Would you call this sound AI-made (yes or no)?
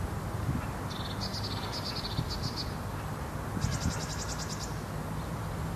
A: no